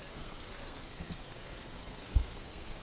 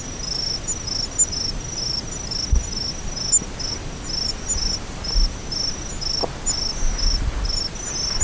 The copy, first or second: first